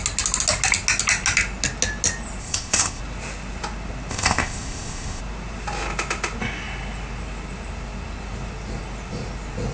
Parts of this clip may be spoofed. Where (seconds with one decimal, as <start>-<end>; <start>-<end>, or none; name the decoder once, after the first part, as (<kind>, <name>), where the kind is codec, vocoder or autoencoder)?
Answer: 2.4-3.0 (codec, ZipCodec); 4.1-5.2